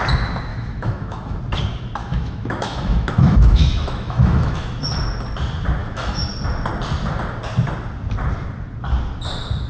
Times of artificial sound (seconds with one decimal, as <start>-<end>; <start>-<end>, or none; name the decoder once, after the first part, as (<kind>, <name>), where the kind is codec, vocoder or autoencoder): 0.5-1.4 (autoencoder, DAC-VAE); 2.0-4.7; 5.8-6.3